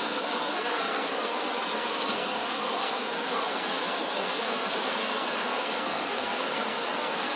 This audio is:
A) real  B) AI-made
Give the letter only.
B